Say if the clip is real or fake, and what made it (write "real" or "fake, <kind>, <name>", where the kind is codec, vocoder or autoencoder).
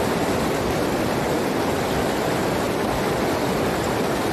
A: real